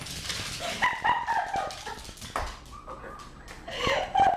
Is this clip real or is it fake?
real